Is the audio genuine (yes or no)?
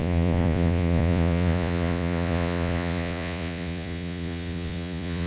no